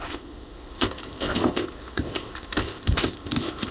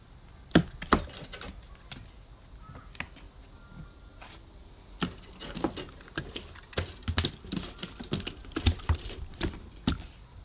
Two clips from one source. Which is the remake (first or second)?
first